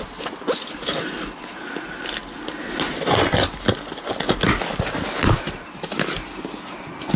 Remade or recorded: recorded